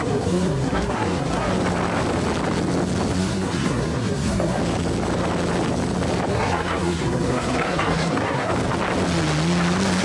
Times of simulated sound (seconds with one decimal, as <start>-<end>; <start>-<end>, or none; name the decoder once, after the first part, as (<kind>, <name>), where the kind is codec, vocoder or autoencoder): 0.0-1.5 (codec, SNAC); 3.2-4.6; 6.3-8.5